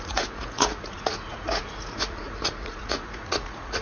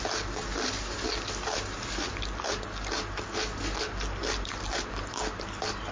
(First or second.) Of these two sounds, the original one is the second